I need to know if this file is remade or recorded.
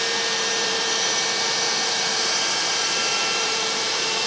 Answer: remade